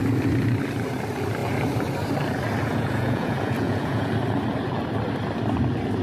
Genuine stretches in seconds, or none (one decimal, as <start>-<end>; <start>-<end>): 0.0-2.6; 4.1-6.0